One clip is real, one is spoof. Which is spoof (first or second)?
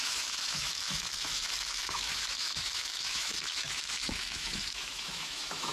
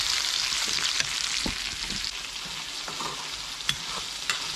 first